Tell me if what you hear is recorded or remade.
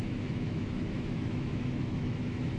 remade